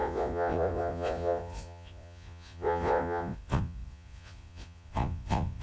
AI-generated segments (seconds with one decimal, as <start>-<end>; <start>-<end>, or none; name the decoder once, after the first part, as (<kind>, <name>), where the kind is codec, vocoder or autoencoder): 0.0-5.6 (vocoder, Vocos)